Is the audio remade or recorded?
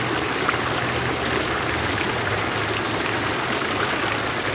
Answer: recorded